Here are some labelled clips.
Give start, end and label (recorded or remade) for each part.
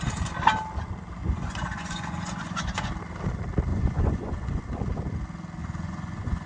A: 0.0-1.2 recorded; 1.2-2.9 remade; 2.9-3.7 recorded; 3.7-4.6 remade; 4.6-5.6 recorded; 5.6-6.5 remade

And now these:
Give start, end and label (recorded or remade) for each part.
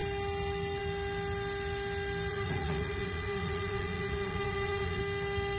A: 0.0-2.3 recorded; 2.3-5.0 remade; 5.0-5.6 recorded